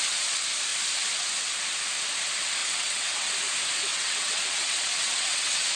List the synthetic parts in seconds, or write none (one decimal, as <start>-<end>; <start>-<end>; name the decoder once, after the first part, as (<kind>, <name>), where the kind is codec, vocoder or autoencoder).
2.6-3.3 (vocoder, WaveNeXt); 3.9-5.7